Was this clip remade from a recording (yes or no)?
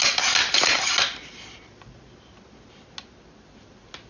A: no